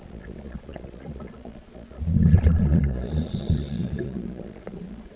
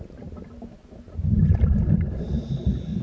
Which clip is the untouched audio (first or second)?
second